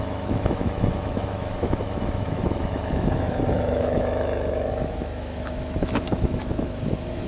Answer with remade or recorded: remade